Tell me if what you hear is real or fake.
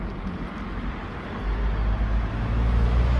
real